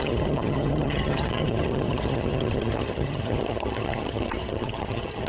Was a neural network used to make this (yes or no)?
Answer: yes